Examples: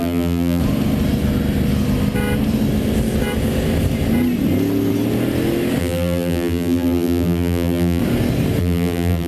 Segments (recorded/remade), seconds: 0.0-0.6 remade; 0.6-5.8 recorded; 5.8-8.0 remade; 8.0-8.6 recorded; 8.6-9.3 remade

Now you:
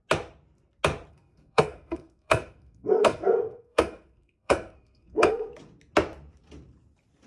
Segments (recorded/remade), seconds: 0.0-1.1 recorded; 1.1-5.5 remade; 5.5-7.3 recorded